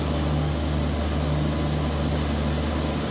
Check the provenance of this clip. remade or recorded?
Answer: recorded